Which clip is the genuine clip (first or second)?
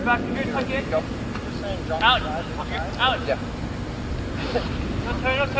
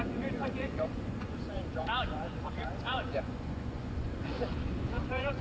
first